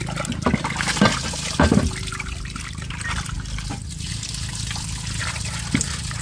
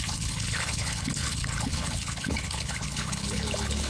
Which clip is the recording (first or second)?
first